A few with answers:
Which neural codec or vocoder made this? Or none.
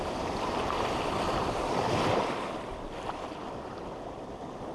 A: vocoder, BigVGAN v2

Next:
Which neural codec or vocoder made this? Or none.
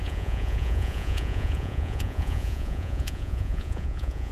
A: vocoder, Vocos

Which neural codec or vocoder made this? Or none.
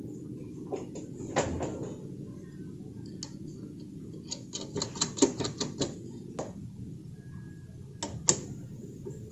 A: none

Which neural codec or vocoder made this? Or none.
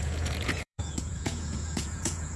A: vocoder, Vocos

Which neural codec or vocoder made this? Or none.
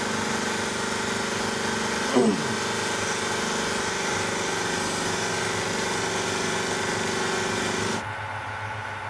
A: none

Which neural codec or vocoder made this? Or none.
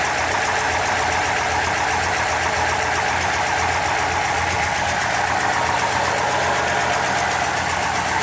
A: none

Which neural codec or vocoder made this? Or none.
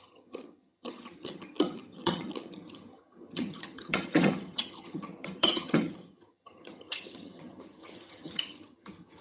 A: vocoder, HiFi-GAN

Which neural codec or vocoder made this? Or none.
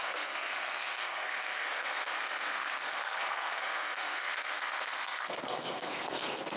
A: codec, SNAC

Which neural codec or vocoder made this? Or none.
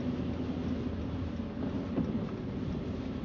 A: none